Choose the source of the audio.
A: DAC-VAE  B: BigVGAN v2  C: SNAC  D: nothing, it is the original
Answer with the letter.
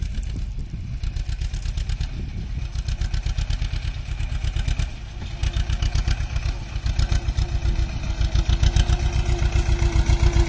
D